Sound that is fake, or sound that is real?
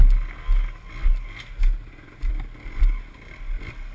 real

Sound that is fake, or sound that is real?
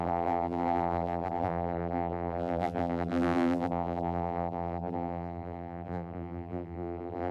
fake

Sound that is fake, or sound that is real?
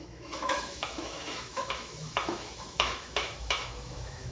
fake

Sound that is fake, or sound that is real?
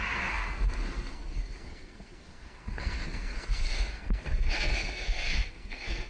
fake